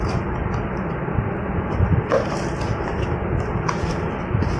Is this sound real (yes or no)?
yes